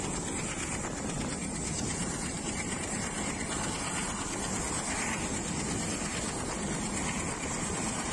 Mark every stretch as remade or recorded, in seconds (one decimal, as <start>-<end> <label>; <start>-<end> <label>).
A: 0.0-2.0 recorded; 2.0-3.4 remade; 3.4-8.1 recorded